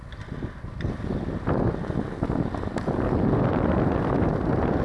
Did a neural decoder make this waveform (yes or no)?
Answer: no